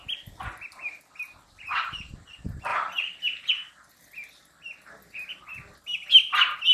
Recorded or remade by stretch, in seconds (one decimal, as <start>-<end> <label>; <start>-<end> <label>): 0.0-2.7 recorded; 2.7-3.5 remade; 3.5-6.7 recorded